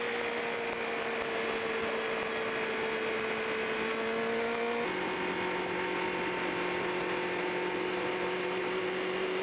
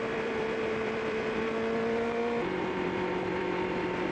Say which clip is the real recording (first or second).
first